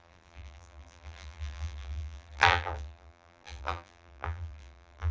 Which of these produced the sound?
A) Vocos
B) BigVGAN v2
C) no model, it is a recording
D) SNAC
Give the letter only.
B